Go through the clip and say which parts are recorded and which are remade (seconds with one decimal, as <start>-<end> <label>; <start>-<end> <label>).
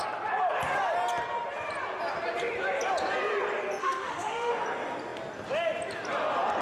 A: 0.0-3.8 recorded; 3.8-4.5 remade; 4.5-6.6 recorded